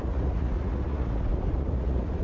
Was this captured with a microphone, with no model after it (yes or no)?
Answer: no